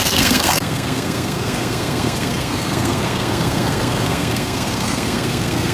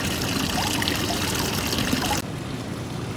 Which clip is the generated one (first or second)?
first